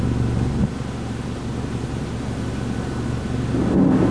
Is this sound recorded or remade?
recorded